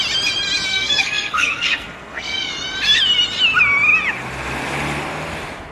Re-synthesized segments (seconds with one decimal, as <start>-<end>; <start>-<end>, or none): 0.7-2.5